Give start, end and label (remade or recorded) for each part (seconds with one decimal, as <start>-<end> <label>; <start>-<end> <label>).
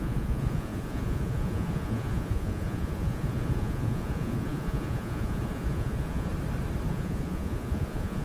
0.0-6.3 remade; 6.3-6.9 recorded; 6.9-8.2 remade